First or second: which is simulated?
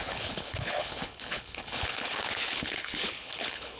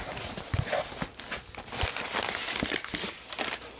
first